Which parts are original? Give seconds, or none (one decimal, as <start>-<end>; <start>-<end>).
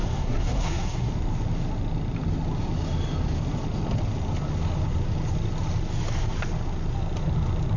1.1-7.8